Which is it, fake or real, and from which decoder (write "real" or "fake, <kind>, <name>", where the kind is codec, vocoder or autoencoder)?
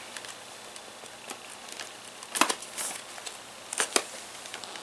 real